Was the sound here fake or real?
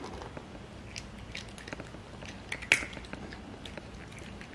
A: real